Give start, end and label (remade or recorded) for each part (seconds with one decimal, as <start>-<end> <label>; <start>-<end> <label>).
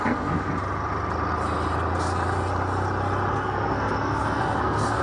0.0-0.5 remade; 0.5-3.3 recorded; 3.3-5.0 remade